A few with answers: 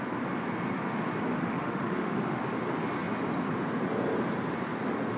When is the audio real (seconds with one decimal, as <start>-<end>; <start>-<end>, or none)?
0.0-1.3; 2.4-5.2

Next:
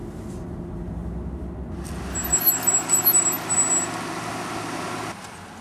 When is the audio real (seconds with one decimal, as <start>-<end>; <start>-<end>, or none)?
0.0-5.6

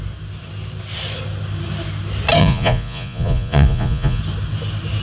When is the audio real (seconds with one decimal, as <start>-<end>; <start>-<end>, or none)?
0.0-2.4; 4.2-5.0